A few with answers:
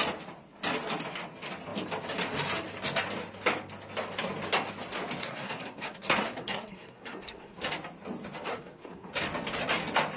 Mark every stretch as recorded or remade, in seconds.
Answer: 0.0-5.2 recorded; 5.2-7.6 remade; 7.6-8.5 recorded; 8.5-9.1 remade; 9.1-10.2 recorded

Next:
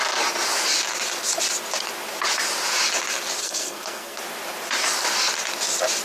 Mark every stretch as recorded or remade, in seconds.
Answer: 0.0-3.4 recorded; 3.4-4.2 remade; 4.2-6.0 recorded